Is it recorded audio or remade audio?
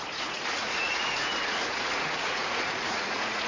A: remade